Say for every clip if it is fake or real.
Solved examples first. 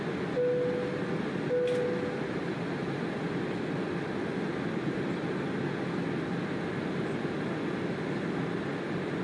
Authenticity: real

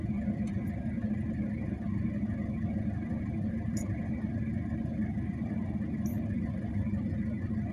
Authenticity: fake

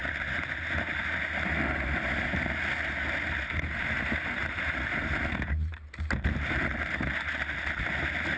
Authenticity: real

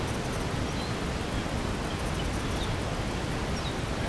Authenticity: real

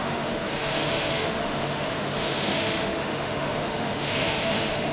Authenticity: fake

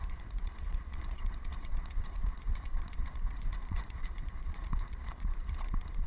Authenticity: fake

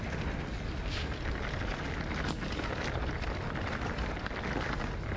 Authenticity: real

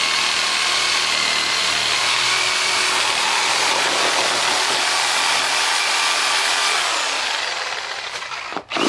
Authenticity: real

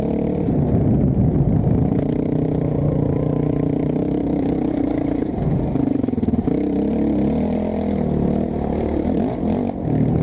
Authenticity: real